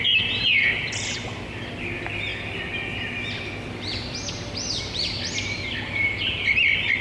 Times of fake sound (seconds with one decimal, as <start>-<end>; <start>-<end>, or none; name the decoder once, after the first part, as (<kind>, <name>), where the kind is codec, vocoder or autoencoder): 0.0-2.3 (vocoder, BigVGAN v2); 4.8-7.0